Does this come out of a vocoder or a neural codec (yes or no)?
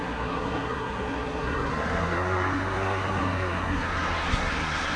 yes